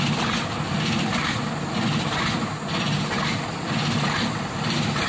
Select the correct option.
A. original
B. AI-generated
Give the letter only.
A